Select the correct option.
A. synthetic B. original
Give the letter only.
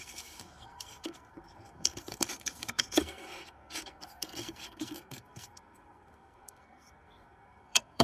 A